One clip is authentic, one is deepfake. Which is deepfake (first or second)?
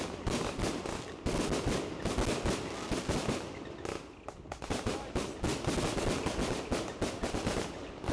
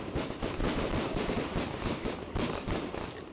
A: second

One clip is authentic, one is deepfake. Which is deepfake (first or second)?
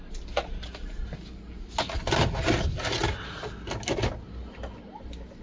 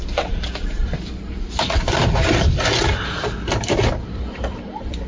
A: second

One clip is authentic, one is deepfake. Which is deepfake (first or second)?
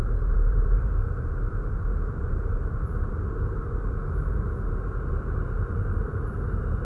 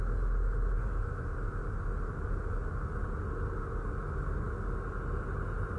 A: first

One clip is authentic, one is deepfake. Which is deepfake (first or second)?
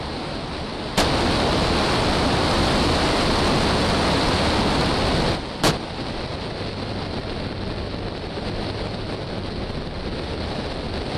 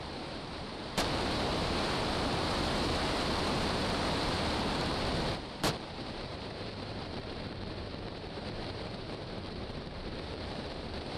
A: second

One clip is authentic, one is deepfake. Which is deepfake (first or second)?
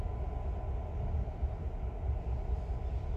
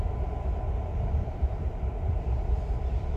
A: second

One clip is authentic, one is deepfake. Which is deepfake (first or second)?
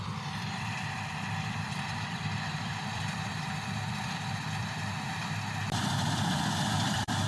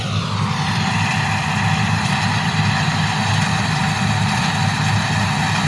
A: first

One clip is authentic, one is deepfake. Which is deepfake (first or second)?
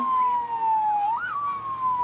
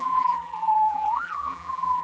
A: second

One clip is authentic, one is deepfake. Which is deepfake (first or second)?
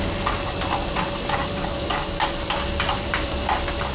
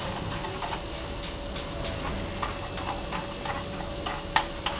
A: first